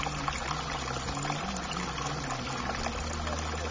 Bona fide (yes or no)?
yes